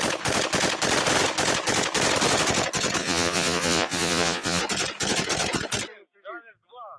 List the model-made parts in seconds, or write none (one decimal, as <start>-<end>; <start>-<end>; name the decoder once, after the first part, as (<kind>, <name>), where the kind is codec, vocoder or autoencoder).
3.0-4.6 (vocoder, Vocos)